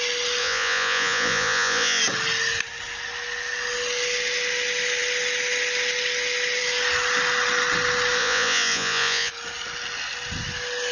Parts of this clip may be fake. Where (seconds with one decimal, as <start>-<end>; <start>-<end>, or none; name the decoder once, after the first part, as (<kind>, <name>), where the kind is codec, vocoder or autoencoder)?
0.4-2.0 (vocoder, Vocos); 8.2-9.3